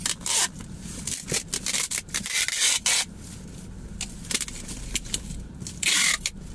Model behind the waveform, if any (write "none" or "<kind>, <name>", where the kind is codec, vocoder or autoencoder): none